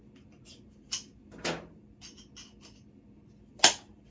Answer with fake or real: real